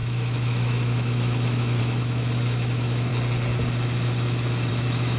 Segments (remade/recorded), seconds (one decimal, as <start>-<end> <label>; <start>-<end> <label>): 0.0-3.1 remade; 3.1-4.7 recorded; 4.7-5.2 remade